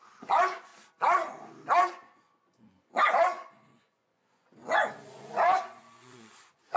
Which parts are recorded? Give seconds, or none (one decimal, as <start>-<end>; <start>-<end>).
0.7-1.9